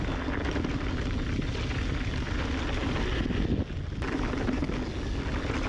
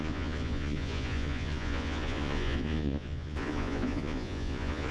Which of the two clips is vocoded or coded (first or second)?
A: second